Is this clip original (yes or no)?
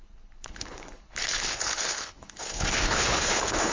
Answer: no